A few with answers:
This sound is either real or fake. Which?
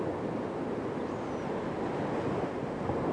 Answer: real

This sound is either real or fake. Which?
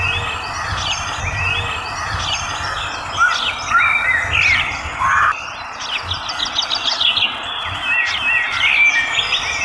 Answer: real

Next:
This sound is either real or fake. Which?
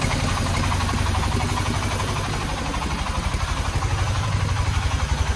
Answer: real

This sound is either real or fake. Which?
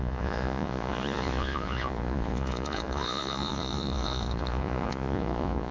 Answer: fake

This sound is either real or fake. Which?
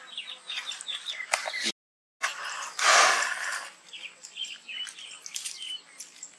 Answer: real